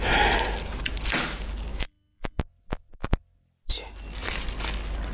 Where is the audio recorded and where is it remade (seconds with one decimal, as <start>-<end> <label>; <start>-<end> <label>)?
0.0-1.7 recorded; 1.7-2.4 remade; 2.4-5.1 recorded